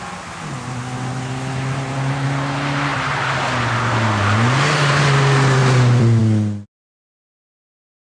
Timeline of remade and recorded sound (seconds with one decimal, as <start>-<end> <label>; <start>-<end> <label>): 0.0-8.0 recorded